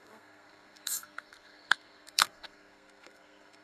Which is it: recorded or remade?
remade